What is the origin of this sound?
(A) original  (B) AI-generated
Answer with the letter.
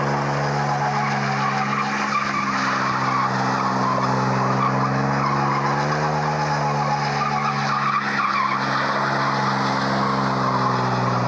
A